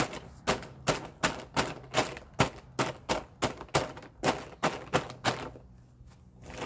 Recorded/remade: recorded